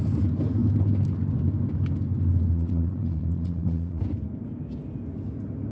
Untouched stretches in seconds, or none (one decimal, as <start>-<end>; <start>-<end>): 0.0-2.5; 4.0-5.7